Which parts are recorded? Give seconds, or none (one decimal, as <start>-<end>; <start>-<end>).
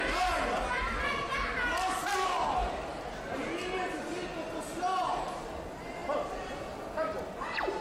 0.0-7.8